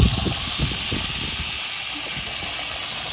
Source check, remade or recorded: recorded